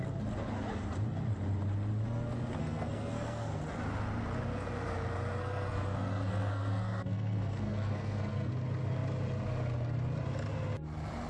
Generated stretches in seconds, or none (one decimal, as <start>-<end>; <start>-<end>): 2.6-3.6; 5.4-8.5